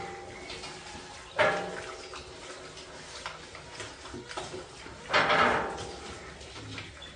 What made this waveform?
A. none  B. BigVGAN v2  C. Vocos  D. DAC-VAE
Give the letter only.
A